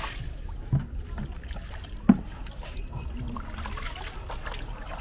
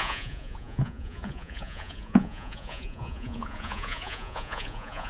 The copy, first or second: second